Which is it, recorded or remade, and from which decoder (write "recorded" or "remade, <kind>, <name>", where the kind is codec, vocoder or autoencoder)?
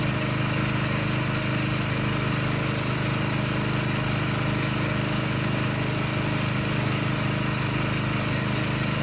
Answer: recorded